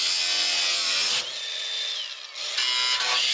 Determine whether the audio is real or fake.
real